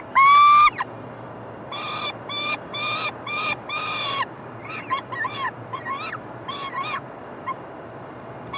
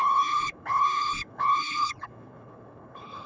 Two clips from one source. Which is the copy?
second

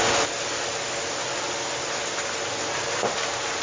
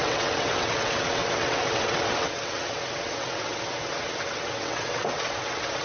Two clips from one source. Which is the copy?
second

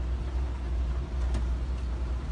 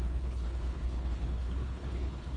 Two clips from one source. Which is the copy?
second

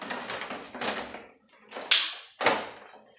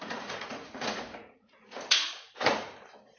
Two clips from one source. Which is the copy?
second